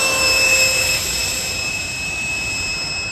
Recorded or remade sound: remade